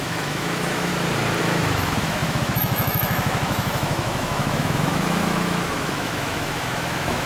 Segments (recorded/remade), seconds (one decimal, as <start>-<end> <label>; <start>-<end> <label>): 0.0-0.9 remade; 0.9-1.4 recorded; 1.4-7.3 remade